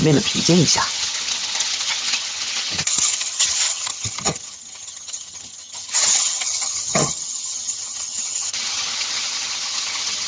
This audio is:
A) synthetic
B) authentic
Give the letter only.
A